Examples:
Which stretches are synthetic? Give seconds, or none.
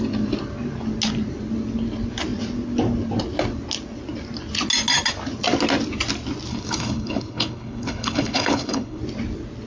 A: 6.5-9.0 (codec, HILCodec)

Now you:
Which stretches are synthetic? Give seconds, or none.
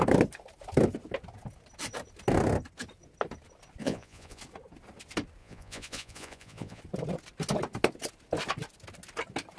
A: 3.8-4.4 (vocoder, Vocos); 5.4-6.8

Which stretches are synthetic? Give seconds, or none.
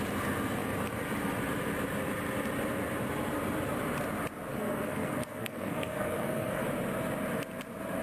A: 4.5-6.6 (codec, SNAC)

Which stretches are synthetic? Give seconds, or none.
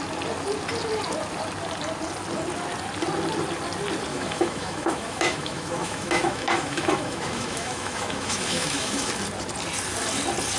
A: 4.1-9.1 (autoencoder, DAC-VAE)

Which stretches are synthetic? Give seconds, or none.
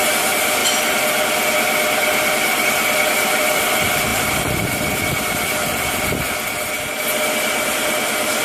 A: 0.6-3.6 (vocoder, BigVGAN v2); 4.1-7.3